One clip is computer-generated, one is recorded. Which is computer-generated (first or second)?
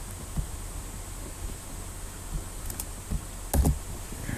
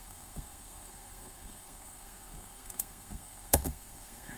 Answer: second